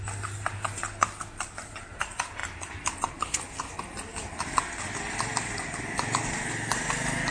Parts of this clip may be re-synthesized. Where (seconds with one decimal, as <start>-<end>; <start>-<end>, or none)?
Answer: 4.1-6.2